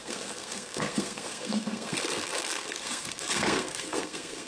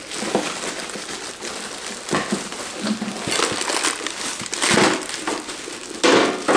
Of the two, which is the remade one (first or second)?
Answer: first